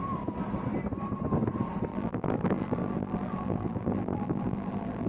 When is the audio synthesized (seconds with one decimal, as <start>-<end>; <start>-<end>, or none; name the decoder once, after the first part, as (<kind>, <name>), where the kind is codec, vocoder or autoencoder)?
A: 1.9-5.1 (vocoder, BigVGAN v2)